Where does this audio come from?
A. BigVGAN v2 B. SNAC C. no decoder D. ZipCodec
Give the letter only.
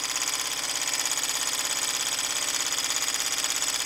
C